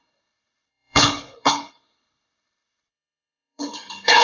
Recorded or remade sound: remade